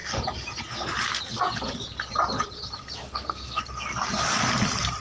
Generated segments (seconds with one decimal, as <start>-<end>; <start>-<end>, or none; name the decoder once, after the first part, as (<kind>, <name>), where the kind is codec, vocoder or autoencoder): 3.0-3.6 (codec, SNAC)